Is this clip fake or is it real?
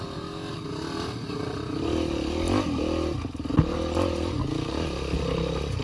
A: real